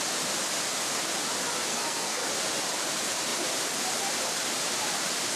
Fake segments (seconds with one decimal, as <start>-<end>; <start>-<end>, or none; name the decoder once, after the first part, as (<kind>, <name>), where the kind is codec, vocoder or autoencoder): 1.7-2.3 (codec, SNAC)

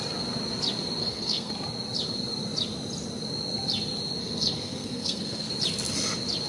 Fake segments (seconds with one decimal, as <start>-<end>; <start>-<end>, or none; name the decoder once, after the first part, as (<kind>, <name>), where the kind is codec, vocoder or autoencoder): 1.0-1.5 (codec, SNAC); 4.2-5.5

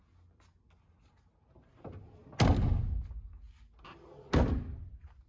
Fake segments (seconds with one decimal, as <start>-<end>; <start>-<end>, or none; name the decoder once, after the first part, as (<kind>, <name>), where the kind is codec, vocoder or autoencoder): none

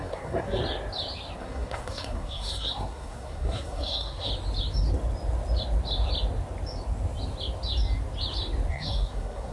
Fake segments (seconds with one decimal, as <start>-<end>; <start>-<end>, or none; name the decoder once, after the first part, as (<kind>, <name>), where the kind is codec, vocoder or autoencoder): 0.0-0.6 (codec, SNAC); 1.4-4.3; 8.7-9.5

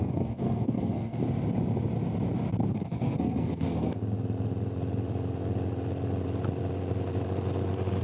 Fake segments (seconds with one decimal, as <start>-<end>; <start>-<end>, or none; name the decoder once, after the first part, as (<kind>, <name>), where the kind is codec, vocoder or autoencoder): 0.0-1.2 (codec, SNAC); 2.7-4.0

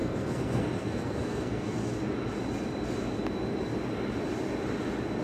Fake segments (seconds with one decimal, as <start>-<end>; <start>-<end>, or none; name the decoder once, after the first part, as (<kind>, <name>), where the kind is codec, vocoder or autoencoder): 0.0-1.8 (codec, SNAC)